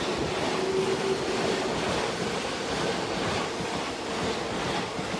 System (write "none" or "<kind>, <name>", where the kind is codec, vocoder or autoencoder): none